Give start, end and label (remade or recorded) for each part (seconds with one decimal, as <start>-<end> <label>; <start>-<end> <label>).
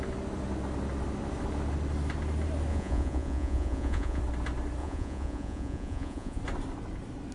0.0-2.7 recorded; 2.7-4.2 remade; 4.2-4.8 recorded; 4.8-6.4 remade; 6.4-7.3 recorded